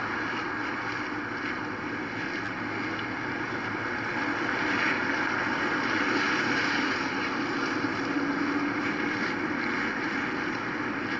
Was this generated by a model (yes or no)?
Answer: no